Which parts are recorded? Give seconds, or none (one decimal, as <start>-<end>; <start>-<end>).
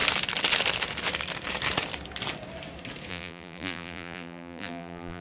0.0-3.1